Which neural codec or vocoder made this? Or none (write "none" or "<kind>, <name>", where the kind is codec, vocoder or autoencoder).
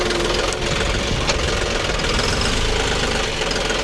none